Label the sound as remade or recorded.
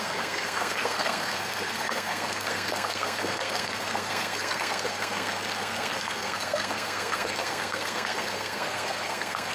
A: remade